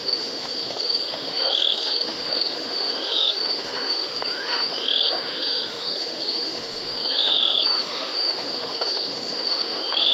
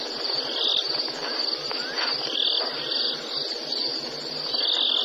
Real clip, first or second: second